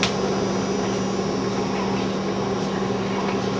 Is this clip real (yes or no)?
yes